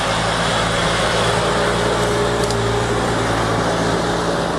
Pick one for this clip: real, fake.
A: real